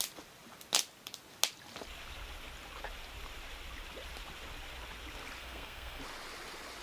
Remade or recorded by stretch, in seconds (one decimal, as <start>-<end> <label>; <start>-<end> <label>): 0.0-5.4 recorded; 5.4-6.0 remade; 6.0-6.8 recorded